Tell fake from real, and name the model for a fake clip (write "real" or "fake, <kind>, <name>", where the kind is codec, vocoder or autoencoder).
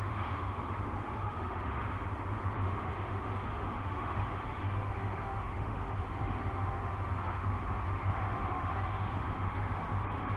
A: fake, autoencoder, DAC-VAE